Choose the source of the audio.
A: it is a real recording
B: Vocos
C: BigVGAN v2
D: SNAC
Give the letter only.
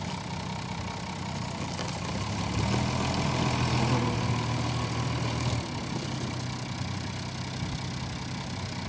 A